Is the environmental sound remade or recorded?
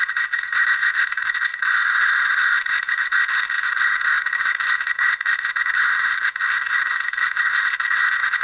remade